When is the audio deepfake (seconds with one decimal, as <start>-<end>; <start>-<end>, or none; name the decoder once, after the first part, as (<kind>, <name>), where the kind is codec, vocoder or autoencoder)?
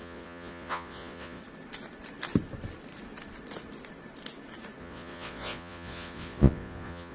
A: 0.0-1.4 (vocoder, Vocos); 4.8-7.1